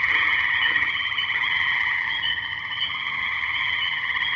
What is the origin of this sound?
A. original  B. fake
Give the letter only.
B